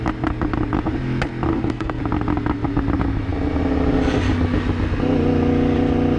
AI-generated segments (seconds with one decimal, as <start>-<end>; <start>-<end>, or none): 1.5-2.0